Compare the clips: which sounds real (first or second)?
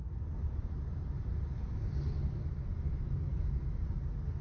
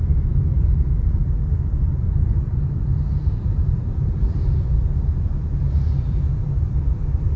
first